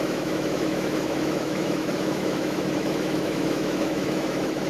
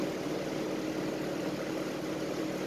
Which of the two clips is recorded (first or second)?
second